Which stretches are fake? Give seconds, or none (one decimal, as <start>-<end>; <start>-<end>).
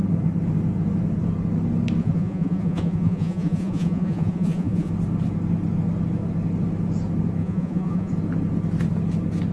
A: 2.0-4.9; 7.4-8.1